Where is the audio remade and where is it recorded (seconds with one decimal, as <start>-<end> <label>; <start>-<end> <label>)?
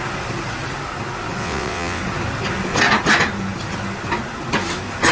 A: 0.0-1.4 recorded; 1.4-2.0 remade; 2.0-5.1 recorded